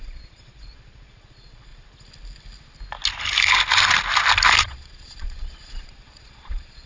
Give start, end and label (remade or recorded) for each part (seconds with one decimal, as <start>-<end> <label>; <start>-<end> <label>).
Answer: 0.0-1.7 remade; 1.7-4.6 recorded; 4.6-6.9 remade